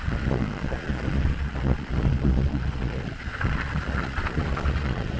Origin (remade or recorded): remade